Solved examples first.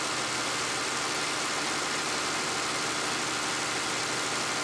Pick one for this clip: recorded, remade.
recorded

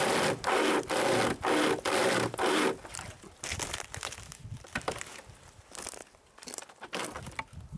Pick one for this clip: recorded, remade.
recorded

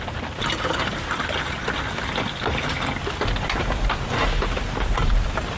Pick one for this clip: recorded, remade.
recorded